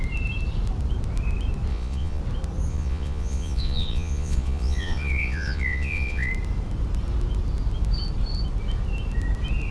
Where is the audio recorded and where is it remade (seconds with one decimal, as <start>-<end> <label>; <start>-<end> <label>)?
0.0-1.7 recorded; 1.7-2.2 remade; 2.2-2.7 recorded; 2.7-6.3 remade; 6.3-9.7 recorded